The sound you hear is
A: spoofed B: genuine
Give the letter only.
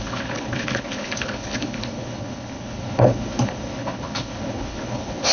A